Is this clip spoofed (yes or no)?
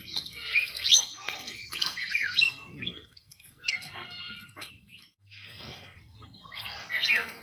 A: yes